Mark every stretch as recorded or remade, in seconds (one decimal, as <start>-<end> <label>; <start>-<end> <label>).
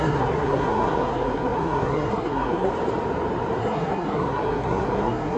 0.0-2.7 remade; 2.7-3.6 recorded; 3.6-5.4 remade